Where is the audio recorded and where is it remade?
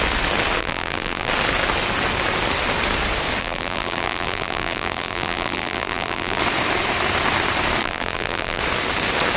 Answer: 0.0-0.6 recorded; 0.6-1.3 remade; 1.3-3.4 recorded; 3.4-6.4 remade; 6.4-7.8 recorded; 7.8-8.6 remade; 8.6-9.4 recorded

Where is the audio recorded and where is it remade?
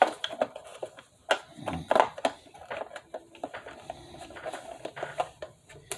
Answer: 0.0-0.7 remade; 0.7-3.0 recorded; 3.0-6.0 remade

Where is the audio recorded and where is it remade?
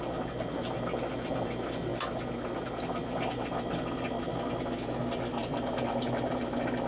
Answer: 0.0-5.4 recorded; 5.4-6.4 remade; 6.4-6.9 recorded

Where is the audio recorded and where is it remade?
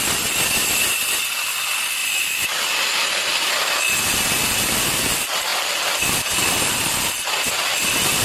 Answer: 0.0-2.0 recorded; 2.0-3.5 remade; 3.5-8.2 recorded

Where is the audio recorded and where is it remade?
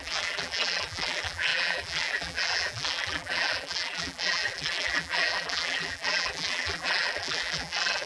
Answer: 0.0-8.1 remade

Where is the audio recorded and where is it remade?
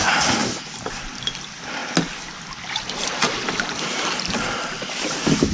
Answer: 0.0-0.4 recorded; 0.4-1.0 remade; 1.0-5.5 recorded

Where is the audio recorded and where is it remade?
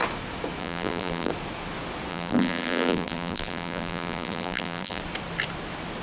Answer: 0.0-0.6 recorded; 0.6-1.3 remade; 1.3-2.1 recorded; 2.1-5.0 remade; 5.0-6.0 recorded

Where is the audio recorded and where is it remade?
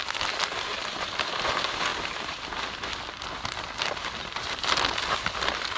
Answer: 0.0-0.7 recorded; 0.7-5.8 remade